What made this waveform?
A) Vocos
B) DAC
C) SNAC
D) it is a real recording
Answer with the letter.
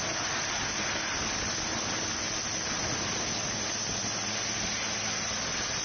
D